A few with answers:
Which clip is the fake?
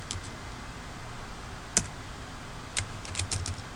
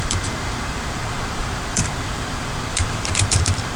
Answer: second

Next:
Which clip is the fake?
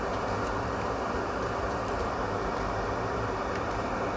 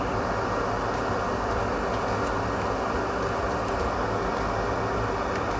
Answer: first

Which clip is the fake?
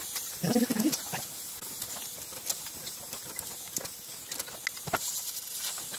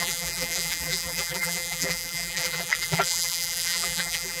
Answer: second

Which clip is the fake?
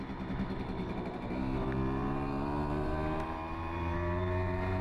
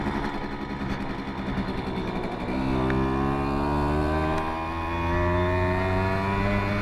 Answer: first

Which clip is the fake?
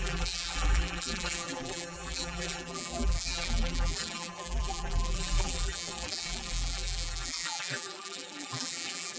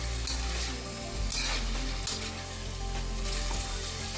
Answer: first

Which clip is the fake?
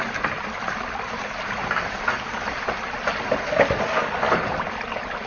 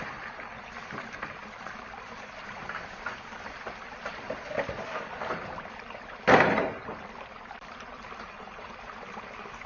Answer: second